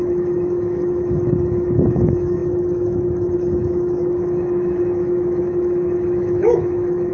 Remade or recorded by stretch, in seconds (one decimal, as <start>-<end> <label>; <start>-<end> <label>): 0.0-7.1 remade